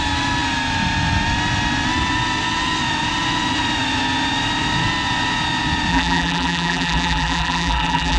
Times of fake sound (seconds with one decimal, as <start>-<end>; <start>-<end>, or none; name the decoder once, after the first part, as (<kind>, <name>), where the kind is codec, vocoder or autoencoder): 5.9-8.2 (vocoder, BigVGAN v2)